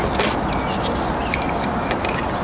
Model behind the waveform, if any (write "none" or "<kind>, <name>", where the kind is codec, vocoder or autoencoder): none